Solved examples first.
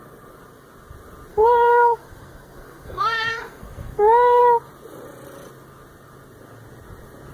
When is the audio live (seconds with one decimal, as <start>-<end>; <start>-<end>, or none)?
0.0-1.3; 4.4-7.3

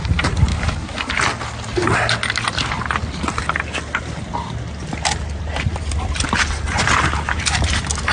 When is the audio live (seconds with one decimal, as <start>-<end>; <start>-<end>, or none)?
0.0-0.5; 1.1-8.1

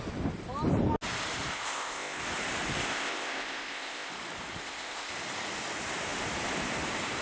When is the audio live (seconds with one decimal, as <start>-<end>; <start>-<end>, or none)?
0.0-1.5; 2.2-2.8; 4.1-4.6; 5.1-7.2

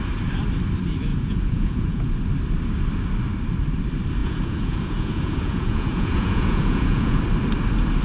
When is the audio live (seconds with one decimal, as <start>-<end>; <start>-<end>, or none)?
0.0-1.1; 2.1-4.2; 7.2-8.0